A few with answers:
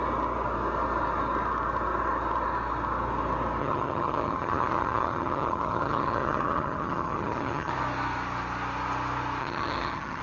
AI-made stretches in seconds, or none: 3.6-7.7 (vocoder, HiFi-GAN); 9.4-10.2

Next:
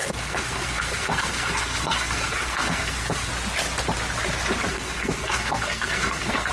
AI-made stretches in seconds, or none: 0.0-3.3 (codec, SNAC); 4.7-6.5

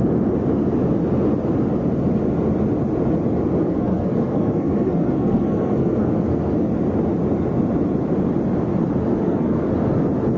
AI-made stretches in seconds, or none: 3.6-6.7 (codec, SNAC); 9.2-9.7

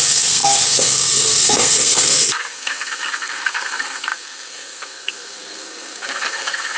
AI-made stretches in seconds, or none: 0.0-6.8 (codec, SNAC)

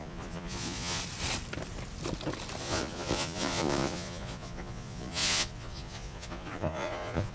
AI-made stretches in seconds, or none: 0.0-1.0 (vocoder, Vocos); 2.6-7.3

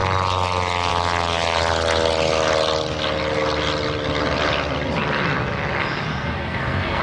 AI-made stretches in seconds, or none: 6.1-7.0 (codec, SNAC)

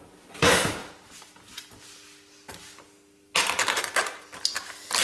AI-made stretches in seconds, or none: none